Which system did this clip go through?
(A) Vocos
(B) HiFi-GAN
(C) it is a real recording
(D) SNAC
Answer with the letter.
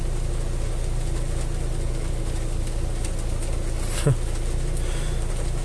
C